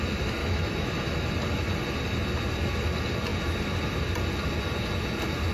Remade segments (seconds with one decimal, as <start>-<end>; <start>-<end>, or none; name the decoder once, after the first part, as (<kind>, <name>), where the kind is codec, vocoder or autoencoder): 0.4-1.3 (autoencoder, DAC-VAE)